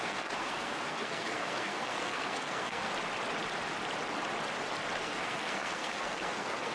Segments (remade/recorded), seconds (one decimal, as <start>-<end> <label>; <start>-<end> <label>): 0.0-2.9 remade; 2.9-5.0 recorded; 5.0-6.7 remade